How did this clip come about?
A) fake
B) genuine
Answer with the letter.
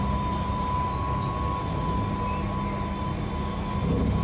B